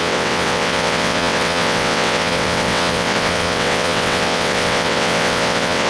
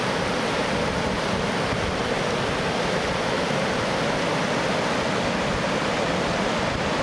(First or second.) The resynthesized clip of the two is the first